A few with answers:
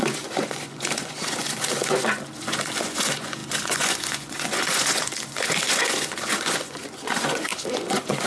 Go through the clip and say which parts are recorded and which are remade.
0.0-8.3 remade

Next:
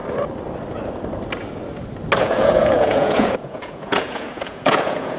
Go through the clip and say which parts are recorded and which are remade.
0.0-2.2 recorded; 2.2-5.2 remade

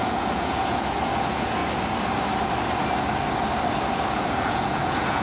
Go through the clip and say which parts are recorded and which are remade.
0.0-1.6 remade; 1.6-4.1 recorded; 4.1-5.2 remade

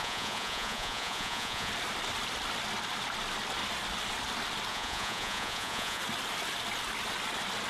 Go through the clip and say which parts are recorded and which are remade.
0.0-1.7 remade; 1.7-4.7 recorded; 4.7-6.0 remade; 6.0-7.7 recorded

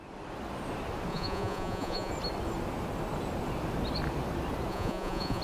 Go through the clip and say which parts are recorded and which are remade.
0.0-1.1 recorded; 1.1-2.1 remade; 2.1-4.7 recorded; 4.7-5.4 remade

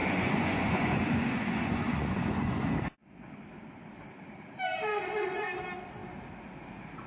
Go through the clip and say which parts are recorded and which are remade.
0.0-2.6 remade; 2.6-4.9 recorded; 4.9-5.6 remade; 5.6-7.1 recorded

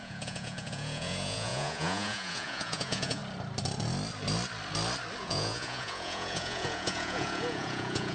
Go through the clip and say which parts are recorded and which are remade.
0.0-3.2 remade; 3.2-5.2 recorded; 5.2-8.1 remade